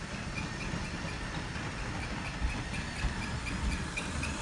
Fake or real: real